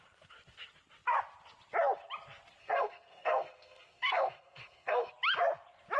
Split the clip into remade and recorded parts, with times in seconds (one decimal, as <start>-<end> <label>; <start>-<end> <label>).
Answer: 0.0-2.6 recorded; 2.6-5.1 remade; 5.1-6.0 recorded